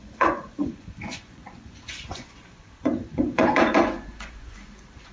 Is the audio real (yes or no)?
no